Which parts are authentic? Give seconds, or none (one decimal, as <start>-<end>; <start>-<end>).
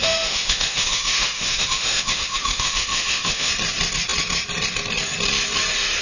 3.5-6.0